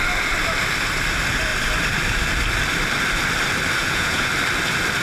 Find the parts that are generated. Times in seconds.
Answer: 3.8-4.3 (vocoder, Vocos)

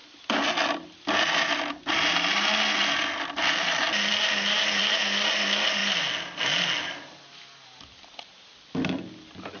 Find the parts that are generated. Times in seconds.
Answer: none

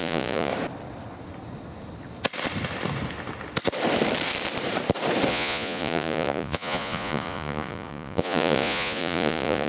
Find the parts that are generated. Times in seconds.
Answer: 0.0-0.5 (vocoder, Vocos); 5.3-9.7